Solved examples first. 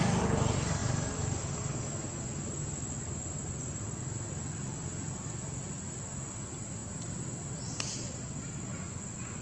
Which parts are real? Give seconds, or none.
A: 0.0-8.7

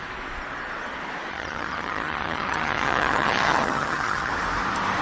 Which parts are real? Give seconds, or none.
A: 0.0-1.3; 4.3-5.0